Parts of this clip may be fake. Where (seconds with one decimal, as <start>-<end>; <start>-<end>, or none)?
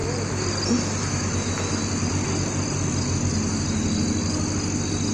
0.8-1.8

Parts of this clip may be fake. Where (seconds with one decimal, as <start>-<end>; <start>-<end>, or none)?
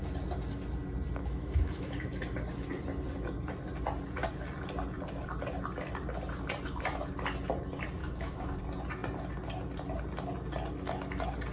1.2-2.2; 8.0-8.6